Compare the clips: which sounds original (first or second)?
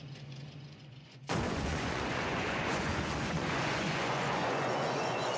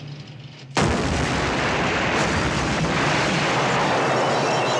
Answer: second